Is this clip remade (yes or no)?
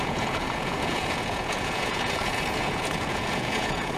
yes